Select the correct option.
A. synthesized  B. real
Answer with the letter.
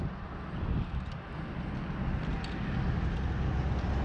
B